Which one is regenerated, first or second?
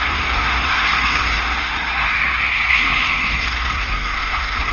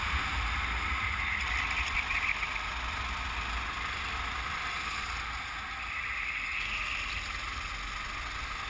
first